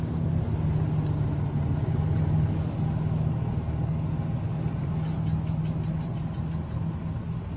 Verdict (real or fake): real